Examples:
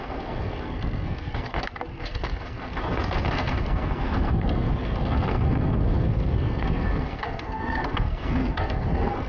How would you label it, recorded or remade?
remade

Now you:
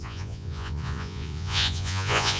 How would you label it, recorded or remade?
remade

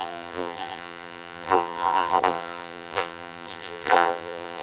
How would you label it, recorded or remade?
remade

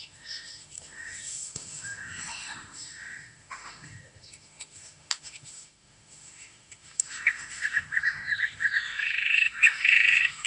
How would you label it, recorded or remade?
remade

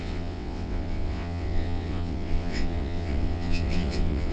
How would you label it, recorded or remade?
remade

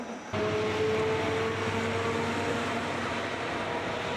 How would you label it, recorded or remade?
recorded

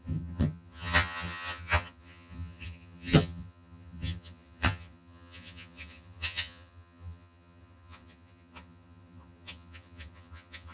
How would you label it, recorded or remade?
remade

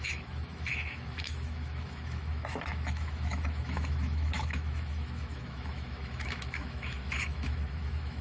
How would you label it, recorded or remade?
remade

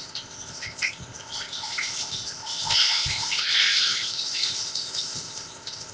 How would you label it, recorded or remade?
remade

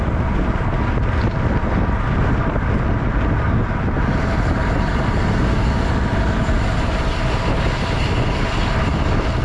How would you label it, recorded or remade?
recorded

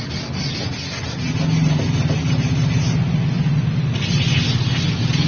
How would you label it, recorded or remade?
recorded